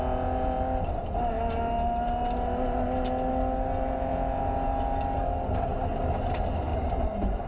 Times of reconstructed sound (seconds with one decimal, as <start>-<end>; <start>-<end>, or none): 6.7-7.5